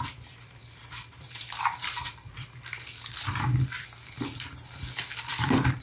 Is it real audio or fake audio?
fake